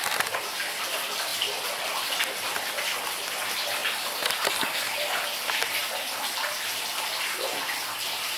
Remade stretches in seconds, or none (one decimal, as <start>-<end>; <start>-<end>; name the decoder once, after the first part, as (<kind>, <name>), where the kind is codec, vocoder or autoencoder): none